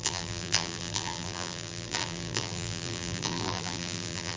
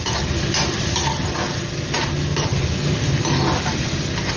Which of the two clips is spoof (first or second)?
first